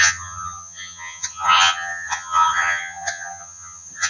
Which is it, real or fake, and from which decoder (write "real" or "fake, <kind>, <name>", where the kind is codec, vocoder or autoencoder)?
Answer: fake, vocoder, HiFi-GAN